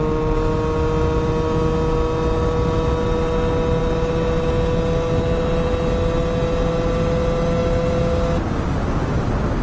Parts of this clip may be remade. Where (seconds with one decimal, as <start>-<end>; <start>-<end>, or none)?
none